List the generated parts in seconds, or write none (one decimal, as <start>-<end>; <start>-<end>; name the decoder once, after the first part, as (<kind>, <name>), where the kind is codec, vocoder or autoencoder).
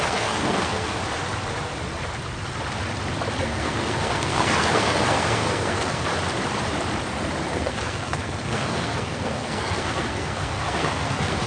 0.0-1.0 (codec, SNAC); 3.4-6.1; 7.5-11.5